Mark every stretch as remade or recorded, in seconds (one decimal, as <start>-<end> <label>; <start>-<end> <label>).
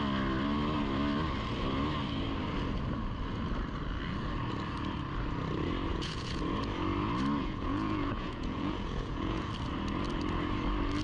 0.0-5.9 recorded; 5.9-6.4 remade; 6.4-7.4 recorded; 7.4-9.5 remade; 9.5-11.0 recorded